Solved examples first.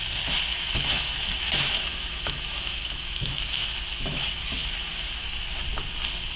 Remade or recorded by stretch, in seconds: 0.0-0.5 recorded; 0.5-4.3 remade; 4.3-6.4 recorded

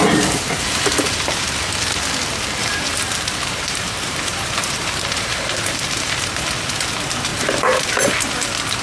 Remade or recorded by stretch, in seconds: 0.0-2.6 recorded; 2.6-6.5 remade; 6.5-7.3 recorded; 7.3-7.9 remade; 7.9-8.8 recorded

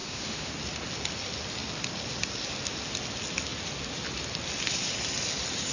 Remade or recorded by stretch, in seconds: 0.0-0.5 remade; 0.5-5.7 recorded

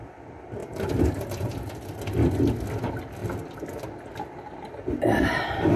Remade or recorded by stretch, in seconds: 0.0-0.6 recorded; 0.6-1.7 remade; 1.7-3.2 recorded; 3.2-5.8 remade

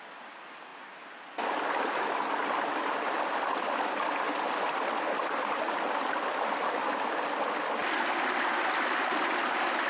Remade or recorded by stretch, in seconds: 0.0-9.9 recorded

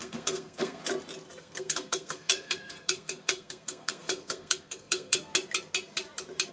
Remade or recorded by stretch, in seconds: 0.0-0.8 remade; 0.8-1.4 recorded; 1.4-5.3 remade; 5.3-6.5 recorded

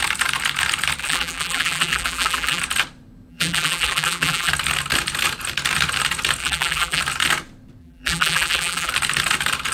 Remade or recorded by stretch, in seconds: 0.0-1.0 recorded; 1.0-2.6 remade; 2.6-3.3 recorded; 3.3-4.5 remade; 4.5-6.4 recorded; 6.4-7.0 remade; 7.0-7.8 recorded; 7.8-8.9 remade; 8.9-9.7 recorded